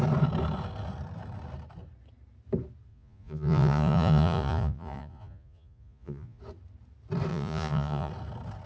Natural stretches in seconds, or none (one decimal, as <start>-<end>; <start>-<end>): 0.0-2.9; 6.4-7.3; 8.1-8.7